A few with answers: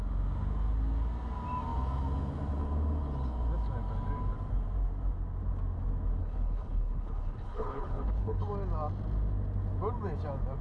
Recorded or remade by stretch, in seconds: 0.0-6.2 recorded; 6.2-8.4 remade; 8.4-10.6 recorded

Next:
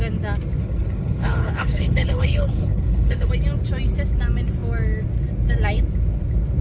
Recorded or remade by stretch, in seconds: 0.0-0.6 recorded; 0.6-3.3 remade; 3.3-6.6 recorded

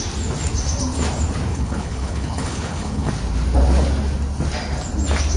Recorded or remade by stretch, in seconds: 0.0-1.5 recorded; 1.5-3.1 remade; 3.1-5.4 recorded